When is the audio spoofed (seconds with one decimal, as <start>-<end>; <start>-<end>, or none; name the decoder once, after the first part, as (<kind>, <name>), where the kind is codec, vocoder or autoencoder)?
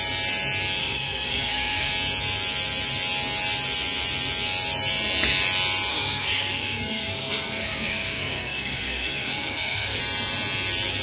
0.8-1.9 (codec, SNAC); 5.9-10.0